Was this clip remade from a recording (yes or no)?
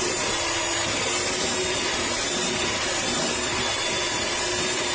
no